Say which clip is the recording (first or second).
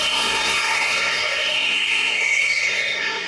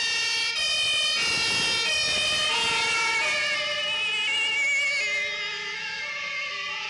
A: second